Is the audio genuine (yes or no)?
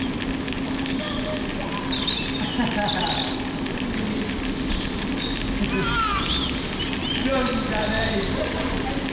yes